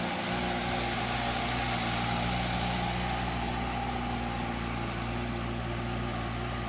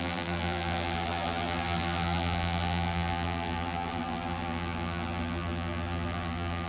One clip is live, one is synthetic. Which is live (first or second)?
first